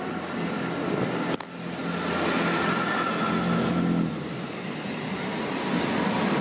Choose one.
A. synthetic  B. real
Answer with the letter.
B